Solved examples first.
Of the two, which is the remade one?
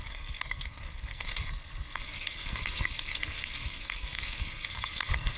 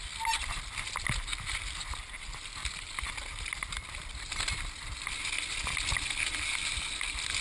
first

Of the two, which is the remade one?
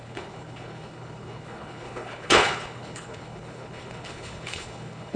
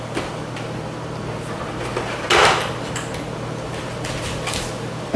first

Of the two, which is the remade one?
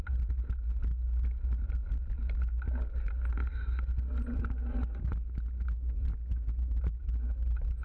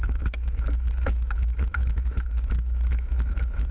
second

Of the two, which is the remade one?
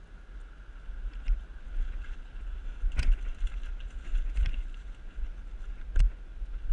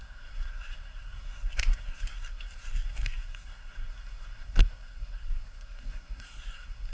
second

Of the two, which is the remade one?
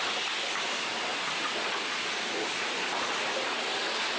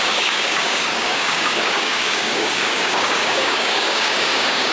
second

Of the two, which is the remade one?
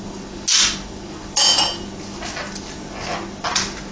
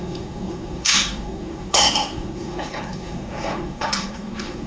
second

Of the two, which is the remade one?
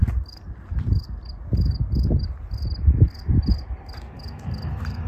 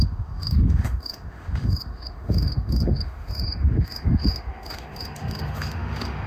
second